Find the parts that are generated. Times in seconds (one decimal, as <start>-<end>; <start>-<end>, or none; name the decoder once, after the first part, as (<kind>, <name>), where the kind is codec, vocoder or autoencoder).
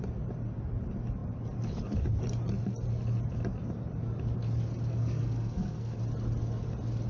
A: 4.9-6.0 (codec, SNAC)